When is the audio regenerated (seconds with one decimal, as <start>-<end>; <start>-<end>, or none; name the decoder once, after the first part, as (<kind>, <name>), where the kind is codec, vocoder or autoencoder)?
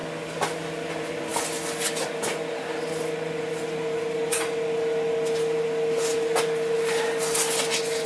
none